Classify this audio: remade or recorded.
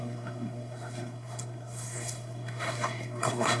remade